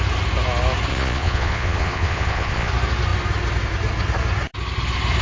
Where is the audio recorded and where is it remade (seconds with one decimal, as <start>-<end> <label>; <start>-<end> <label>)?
0.0-0.9 recorded; 0.9-2.7 remade; 2.7-5.2 recorded